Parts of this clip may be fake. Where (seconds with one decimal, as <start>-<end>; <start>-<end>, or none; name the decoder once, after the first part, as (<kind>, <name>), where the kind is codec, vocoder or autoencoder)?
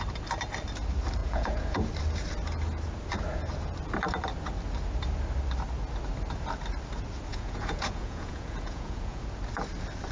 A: 1.2-1.9 (vocoder, Vocos); 7.3-9.2